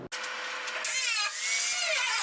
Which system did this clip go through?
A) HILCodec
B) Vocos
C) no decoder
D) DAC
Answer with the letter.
C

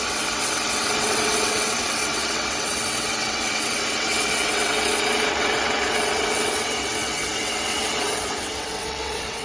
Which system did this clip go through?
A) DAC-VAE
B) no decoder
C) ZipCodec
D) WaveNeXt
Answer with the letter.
D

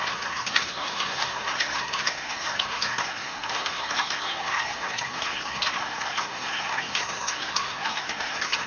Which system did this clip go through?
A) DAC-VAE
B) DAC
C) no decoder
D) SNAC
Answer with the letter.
D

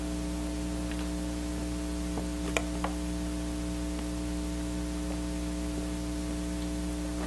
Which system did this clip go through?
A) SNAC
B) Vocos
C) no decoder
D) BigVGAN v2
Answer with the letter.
C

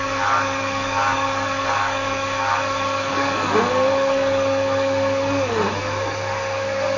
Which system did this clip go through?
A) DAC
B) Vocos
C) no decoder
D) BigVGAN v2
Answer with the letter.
A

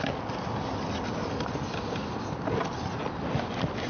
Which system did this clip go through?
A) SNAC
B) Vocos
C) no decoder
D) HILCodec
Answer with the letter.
C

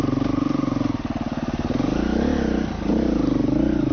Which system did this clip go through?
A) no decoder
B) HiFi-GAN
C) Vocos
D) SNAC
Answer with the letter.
A